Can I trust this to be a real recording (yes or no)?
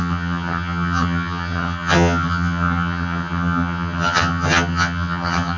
no